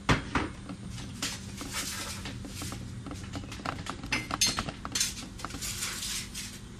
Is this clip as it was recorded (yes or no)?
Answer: yes